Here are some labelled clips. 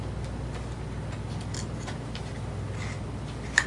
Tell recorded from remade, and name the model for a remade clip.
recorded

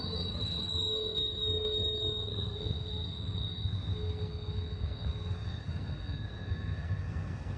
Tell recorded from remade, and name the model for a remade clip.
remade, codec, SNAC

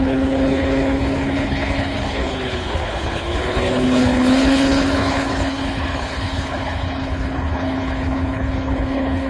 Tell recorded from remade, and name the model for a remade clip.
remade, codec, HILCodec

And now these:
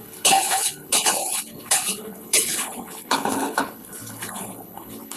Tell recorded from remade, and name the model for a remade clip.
remade, codec, HILCodec